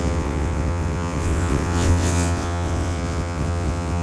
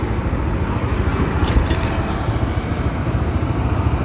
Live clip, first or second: second